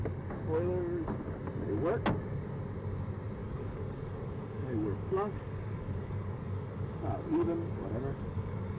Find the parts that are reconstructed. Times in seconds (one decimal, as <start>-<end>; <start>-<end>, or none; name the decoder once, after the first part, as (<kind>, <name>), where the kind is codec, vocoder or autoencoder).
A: 3.4-8.8 (codec, DAC)